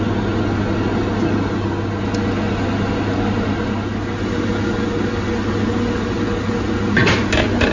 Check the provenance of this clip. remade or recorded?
recorded